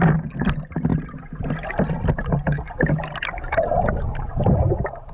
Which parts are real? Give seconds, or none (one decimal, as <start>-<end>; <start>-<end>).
0.0-5.1